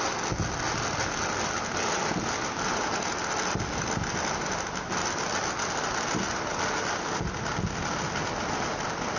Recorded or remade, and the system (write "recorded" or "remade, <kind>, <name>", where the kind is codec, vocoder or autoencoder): recorded